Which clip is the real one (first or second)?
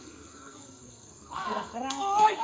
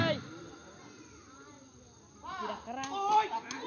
second